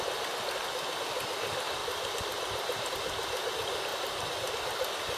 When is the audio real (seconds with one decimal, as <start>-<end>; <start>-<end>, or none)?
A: 0.0-1.8; 2.9-3.9; 4.5-5.2